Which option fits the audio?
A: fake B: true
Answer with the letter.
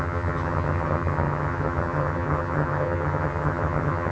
A